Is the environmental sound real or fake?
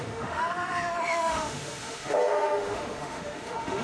fake